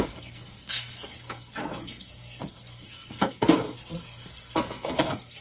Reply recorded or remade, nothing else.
remade